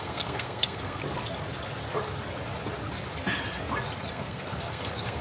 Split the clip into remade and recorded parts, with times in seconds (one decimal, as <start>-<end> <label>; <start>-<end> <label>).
0.0-1.0 remade; 1.0-4.1 recorded; 4.1-5.2 remade